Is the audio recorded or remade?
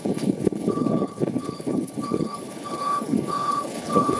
remade